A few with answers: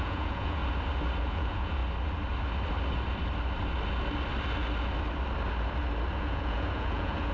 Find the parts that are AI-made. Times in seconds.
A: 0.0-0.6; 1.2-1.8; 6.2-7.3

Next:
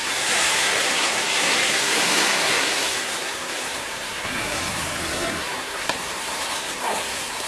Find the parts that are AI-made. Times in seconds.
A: 0.0-7.5